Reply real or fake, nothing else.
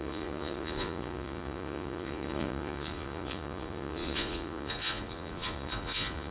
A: fake